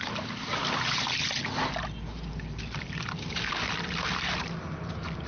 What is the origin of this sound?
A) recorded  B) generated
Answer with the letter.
A